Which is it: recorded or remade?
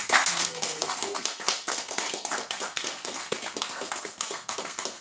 remade